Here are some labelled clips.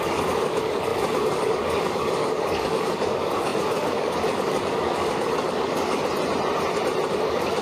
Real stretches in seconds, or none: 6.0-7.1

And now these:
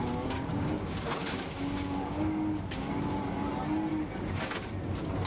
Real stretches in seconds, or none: 3.2-3.9; 4.4-5.3

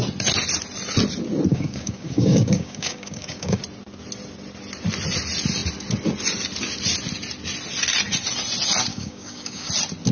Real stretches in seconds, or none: 0.0-1.5; 3.6-8.9; 9.7-10.1

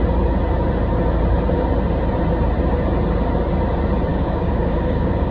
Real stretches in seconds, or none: 0.0-4.1